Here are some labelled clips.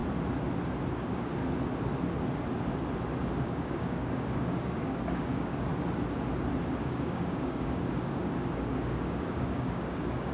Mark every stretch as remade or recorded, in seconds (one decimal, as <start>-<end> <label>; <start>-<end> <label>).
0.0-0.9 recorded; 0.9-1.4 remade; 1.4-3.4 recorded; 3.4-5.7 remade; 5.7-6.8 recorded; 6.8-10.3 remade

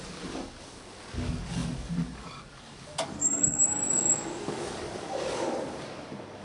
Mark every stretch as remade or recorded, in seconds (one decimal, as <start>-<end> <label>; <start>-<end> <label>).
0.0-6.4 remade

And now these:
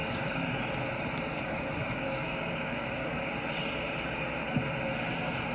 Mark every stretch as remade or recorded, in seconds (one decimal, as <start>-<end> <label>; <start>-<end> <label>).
0.0-0.6 remade; 0.6-1.3 recorded; 1.3-3.3 remade; 3.3-5.5 recorded

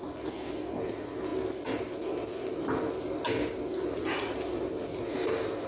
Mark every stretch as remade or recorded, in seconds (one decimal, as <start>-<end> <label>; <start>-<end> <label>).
0.0-5.7 recorded

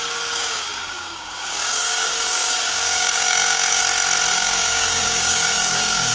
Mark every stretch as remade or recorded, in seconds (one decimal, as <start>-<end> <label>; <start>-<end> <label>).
0.0-3.8 remade; 3.8-4.3 recorded; 4.3-6.1 remade